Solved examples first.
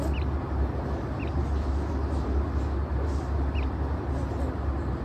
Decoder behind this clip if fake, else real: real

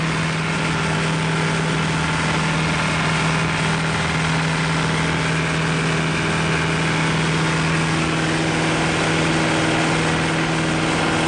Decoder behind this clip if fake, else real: real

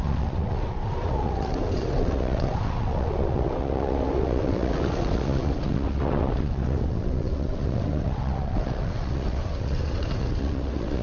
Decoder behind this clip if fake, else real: fake, vocoder, WaveNeXt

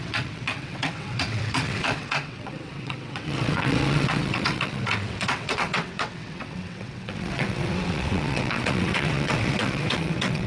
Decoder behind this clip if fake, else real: fake, vocoder, WaveNeXt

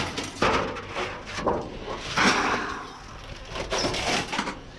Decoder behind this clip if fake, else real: real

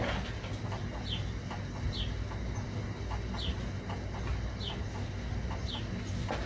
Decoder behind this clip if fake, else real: real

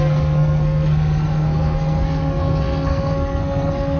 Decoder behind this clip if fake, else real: fake, codec, SNAC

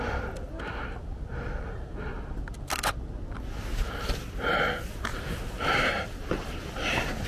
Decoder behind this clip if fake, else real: real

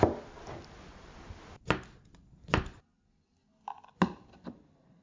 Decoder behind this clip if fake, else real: real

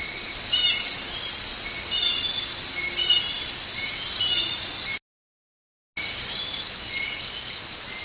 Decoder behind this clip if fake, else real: real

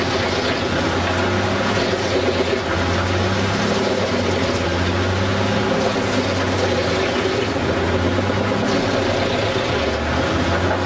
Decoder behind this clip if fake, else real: real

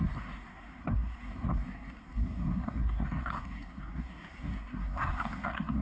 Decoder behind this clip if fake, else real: fake, codec, SNAC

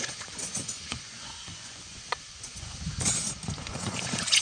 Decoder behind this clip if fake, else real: fake, vocoder, Vocos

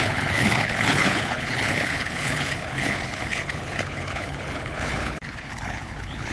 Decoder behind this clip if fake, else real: fake, codec, HILCodec